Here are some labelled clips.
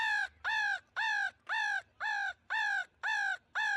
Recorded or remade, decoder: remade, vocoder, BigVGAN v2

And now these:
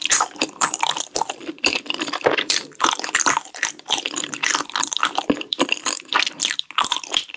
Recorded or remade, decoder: remade, vocoder, BigVGAN v2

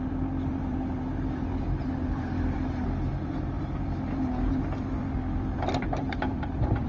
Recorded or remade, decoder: remade, vocoder, BigVGAN v2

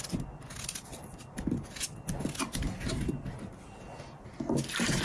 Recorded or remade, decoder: recorded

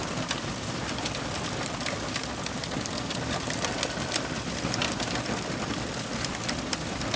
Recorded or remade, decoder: remade, vocoder, BigVGAN v2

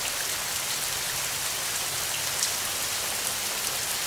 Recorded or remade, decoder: recorded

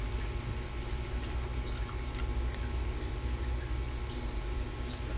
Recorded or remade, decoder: recorded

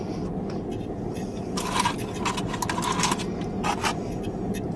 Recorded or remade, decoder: recorded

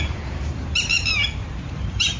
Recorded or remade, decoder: remade, vocoder, BigVGAN v2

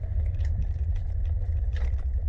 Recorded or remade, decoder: remade, vocoder, BigVGAN v2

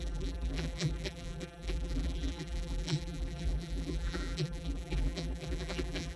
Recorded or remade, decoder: remade, vocoder, BigVGAN v2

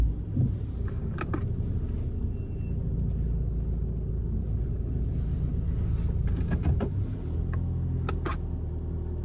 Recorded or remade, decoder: recorded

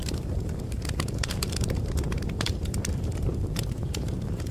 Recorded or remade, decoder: remade, vocoder, BigVGAN v2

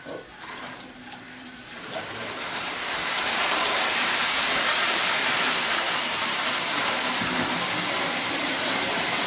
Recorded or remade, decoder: remade, vocoder, BigVGAN v2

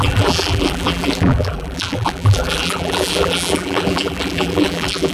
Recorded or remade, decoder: remade, vocoder, BigVGAN v2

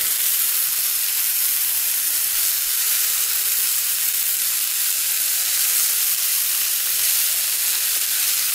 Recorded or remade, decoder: remade, vocoder, BigVGAN v2